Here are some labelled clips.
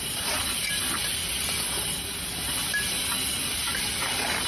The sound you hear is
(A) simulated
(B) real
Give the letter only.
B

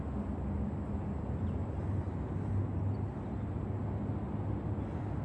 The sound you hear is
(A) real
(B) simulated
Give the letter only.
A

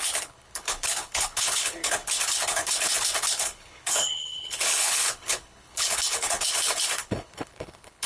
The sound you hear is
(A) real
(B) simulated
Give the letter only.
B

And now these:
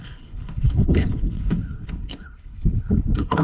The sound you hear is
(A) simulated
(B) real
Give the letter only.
A